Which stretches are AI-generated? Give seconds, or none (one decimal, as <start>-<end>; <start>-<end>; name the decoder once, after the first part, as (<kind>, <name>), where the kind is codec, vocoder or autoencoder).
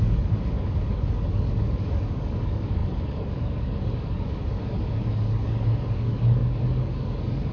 0.0-7.5 (codec, DAC)